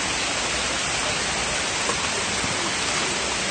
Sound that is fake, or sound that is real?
real